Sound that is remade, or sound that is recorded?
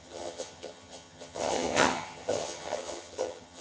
remade